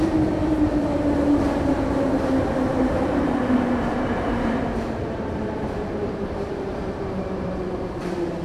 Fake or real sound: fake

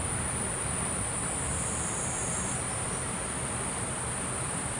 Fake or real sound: fake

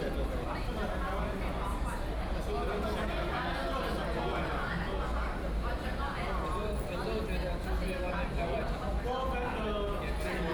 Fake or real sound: real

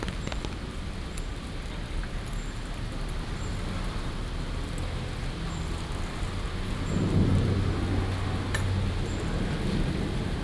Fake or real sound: real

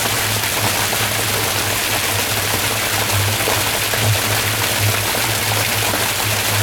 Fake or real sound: real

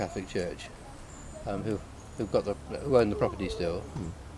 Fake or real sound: fake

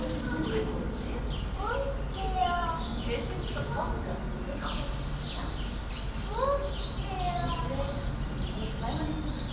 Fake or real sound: real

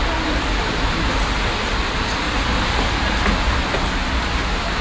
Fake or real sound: real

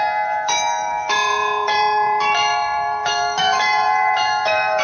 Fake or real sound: fake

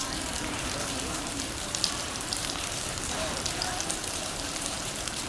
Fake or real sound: fake